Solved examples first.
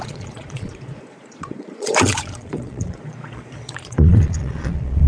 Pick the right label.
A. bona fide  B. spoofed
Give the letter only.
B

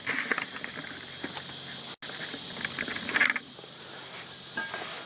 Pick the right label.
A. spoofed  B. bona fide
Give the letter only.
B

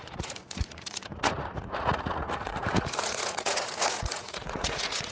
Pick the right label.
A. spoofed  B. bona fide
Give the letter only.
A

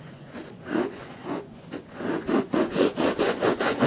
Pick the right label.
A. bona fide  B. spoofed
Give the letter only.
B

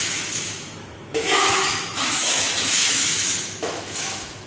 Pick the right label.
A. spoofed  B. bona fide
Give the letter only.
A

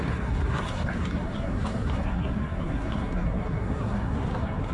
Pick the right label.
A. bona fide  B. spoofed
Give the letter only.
B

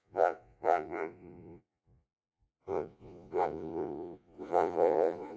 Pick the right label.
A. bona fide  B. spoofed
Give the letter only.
B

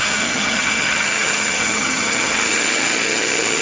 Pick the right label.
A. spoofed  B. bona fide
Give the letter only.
A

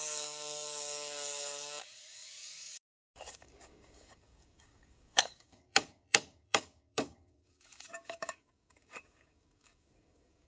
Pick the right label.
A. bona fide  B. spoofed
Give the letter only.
B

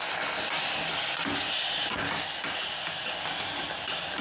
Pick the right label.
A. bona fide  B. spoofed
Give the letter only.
A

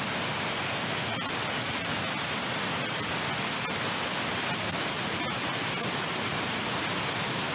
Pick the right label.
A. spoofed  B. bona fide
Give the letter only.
B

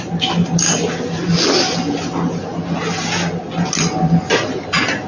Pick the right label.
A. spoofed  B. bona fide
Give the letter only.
B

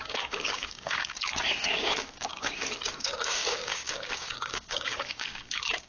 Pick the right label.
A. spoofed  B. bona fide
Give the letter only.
A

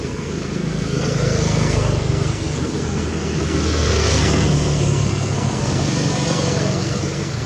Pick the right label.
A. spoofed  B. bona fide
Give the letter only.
A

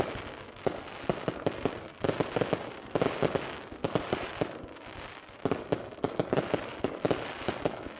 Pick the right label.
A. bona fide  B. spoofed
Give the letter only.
A